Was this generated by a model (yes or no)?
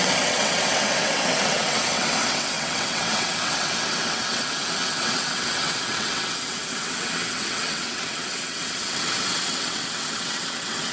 yes